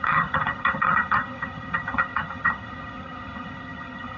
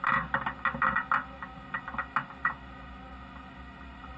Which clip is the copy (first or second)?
first